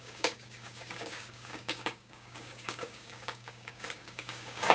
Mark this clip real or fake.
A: fake